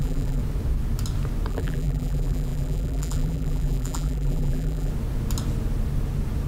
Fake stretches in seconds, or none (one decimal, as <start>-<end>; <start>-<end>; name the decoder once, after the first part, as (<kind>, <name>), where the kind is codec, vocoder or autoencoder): 0.0-0.4 (vocoder, BigVGAN v2); 1.5-4.9